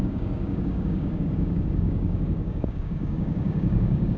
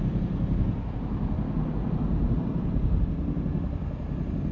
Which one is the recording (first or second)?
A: second